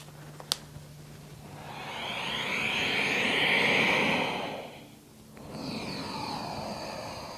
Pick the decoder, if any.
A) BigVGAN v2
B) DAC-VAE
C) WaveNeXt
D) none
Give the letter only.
D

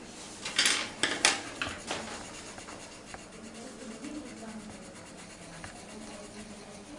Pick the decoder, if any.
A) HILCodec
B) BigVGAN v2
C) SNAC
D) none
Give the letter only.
D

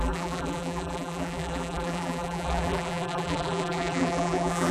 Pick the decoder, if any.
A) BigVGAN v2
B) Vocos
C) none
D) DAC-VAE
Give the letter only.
A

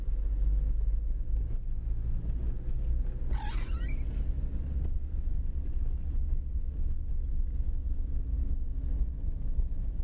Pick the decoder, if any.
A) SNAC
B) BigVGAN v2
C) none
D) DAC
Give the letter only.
C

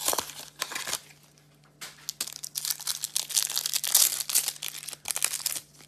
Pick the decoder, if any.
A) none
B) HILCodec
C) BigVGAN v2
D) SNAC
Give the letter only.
A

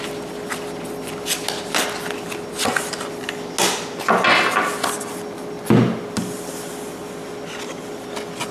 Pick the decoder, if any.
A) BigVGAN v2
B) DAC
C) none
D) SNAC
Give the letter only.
C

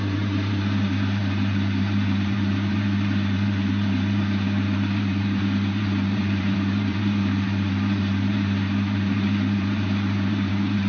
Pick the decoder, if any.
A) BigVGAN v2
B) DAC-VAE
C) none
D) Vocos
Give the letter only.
A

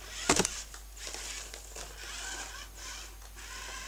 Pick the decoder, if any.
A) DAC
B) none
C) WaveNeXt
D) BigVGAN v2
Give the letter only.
B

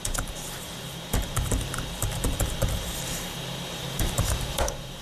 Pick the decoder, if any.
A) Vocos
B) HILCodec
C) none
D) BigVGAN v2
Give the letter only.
D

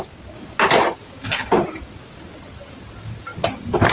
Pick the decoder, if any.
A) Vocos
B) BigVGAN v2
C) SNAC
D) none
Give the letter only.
D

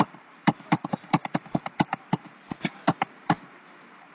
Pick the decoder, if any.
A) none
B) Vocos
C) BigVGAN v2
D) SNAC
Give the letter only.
C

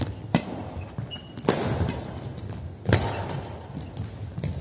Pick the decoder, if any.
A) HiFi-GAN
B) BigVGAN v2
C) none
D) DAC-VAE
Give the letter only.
C